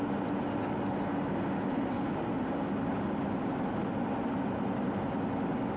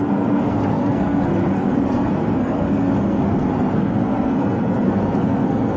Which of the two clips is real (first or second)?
first